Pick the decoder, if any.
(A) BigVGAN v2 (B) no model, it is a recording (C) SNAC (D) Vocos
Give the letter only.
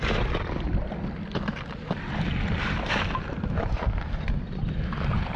B